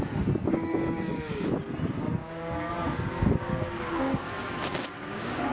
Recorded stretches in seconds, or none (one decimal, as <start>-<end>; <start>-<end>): 0.0-0.5; 1.5-2.2; 2.7-3.2